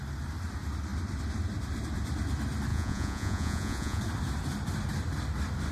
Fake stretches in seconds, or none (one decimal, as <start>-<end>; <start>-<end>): 2.7-4.0